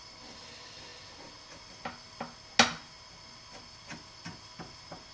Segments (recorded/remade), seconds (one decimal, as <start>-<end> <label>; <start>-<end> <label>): 0.0-5.1 recorded